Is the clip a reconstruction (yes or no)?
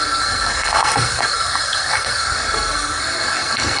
yes